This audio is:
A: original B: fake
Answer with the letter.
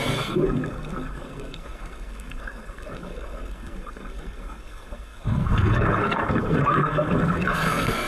B